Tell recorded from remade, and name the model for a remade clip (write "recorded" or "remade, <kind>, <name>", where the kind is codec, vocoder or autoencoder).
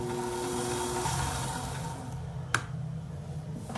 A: recorded